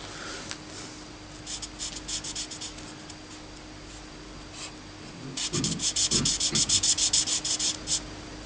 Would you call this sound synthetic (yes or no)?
no